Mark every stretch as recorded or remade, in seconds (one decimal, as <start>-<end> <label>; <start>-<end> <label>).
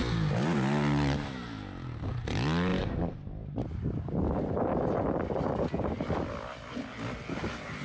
0.0-7.8 recorded